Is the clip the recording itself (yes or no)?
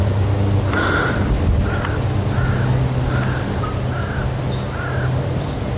yes